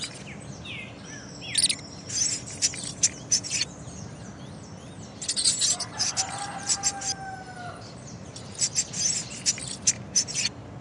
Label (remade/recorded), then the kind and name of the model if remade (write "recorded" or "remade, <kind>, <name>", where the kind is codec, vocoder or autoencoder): recorded